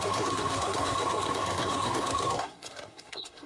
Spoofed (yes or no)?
yes